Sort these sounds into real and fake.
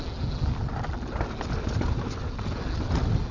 real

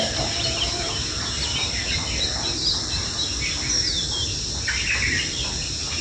real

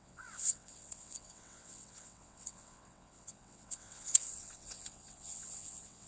fake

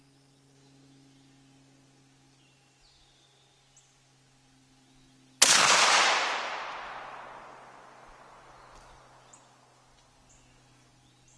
real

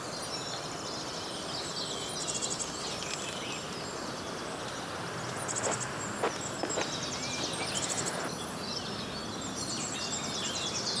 real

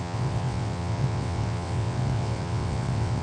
fake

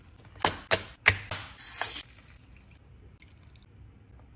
real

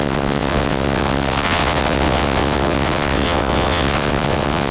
fake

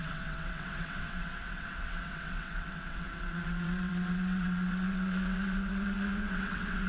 fake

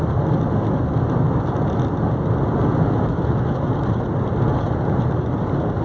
real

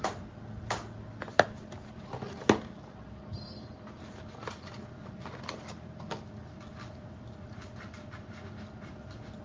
real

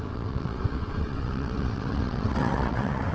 fake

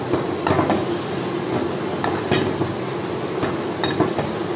real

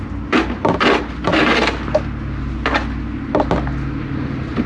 real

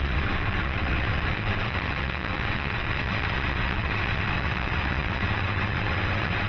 fake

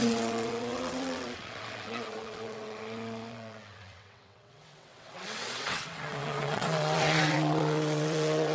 fake